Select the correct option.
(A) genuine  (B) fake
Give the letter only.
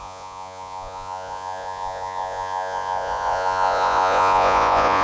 B